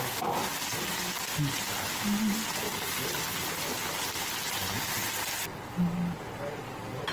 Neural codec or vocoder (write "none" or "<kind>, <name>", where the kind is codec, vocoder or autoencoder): none